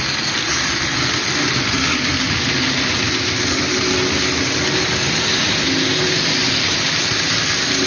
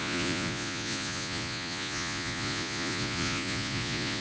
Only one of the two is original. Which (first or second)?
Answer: first